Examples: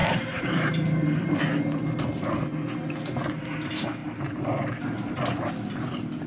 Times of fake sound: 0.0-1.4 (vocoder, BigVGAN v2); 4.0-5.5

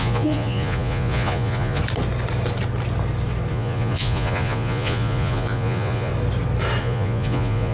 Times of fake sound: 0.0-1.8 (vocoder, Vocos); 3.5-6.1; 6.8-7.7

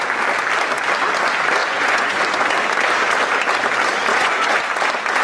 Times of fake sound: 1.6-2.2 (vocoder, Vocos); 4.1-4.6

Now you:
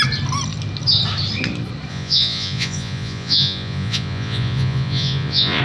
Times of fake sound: 1.9-5.6 (vocoder, Vocos)

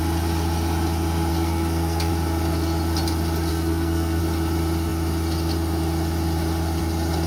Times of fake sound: 1.3-2.1 (codec, SNAC); 3.5-4.2